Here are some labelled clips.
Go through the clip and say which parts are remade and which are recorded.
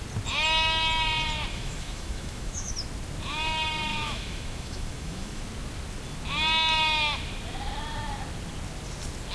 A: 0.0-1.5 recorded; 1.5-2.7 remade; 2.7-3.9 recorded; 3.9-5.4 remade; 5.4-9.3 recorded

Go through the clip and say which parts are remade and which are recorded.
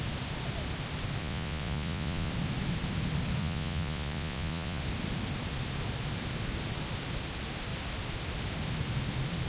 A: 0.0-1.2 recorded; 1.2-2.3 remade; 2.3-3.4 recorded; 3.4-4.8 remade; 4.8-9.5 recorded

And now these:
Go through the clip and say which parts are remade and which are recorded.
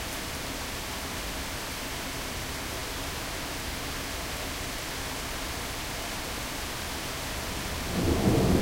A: 0.0-8.6 recorded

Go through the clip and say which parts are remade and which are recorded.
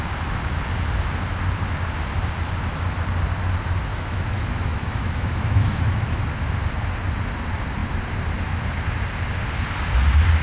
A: 0.0-3.9 recorded; 3.9-6.2 remade; 6.2-10.4 recorded